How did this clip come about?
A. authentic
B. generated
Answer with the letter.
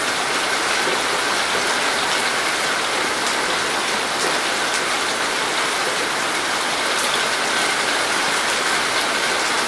A